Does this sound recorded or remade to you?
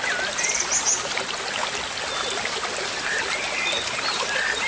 recorded